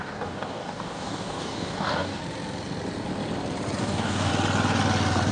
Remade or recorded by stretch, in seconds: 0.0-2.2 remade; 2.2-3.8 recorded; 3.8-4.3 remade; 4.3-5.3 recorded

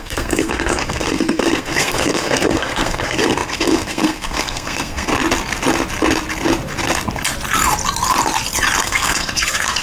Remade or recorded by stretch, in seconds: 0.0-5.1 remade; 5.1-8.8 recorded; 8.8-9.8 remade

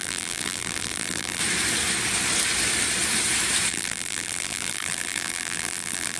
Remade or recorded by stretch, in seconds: 0.0-1.4 remade; 1.4-3.7 recorded; 3.7-6.2 remade

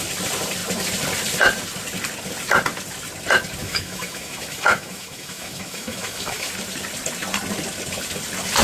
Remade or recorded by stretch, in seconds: 0.0-3.6 recorded; 3.6-6.5 remade; 6.5-8.6 recorded

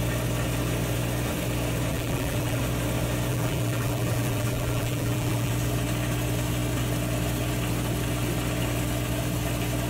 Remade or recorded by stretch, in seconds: 0.0-1.9 recorded; 1.9-2.6 remade; 2.6-3.3 recorded; 3.3-5.5 remade; 5.5-9.9 recorded

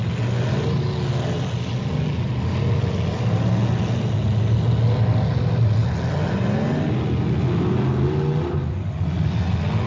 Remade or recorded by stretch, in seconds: 0.0-9.9 recorded

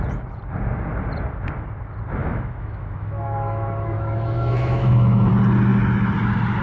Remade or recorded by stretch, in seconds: 0.0-2.2 recorded; 2.2-5.3 remade; 5.3-6.6 recorded

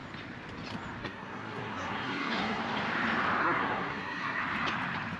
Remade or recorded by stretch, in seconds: 0.0-1.0 recorded; 1.0-2.6 remade; 2.6-3.4 recorded; 3.4-4.4 remade; 4.4-5.2 recorded